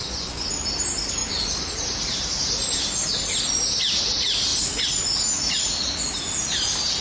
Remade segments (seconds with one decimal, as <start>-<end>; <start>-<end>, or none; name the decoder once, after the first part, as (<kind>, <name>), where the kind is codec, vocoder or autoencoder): 0.0-0.5 (vocoder, Vocos)